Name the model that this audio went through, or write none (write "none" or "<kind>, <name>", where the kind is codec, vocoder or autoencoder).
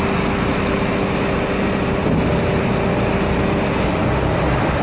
none